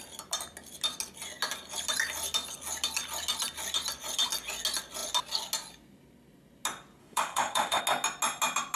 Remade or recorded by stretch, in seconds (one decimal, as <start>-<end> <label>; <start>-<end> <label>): 0.0-7.0 recorded; 7.0-7.8 remade; 7.8-8.8 recorded